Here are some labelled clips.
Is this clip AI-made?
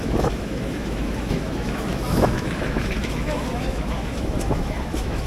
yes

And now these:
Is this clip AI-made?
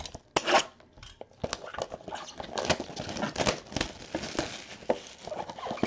no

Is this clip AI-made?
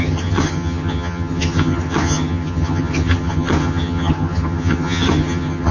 yes